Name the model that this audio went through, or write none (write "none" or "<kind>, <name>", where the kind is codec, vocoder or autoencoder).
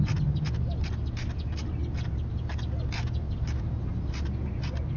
none